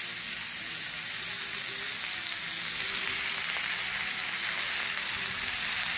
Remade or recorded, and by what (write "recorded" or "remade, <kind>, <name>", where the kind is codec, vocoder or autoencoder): recorded